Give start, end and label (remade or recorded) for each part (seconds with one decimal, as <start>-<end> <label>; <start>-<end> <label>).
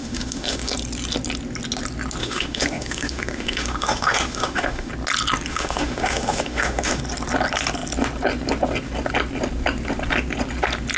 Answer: 0.0-0.7 remade; 0.7-2.2 recorded; 2.2-4.9 remade; 4.9-5.5 recorded; 5.5-7.0 remade; 7.0-11.0 recorded